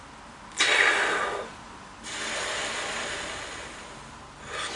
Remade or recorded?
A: recorded